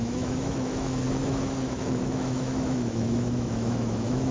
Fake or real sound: fake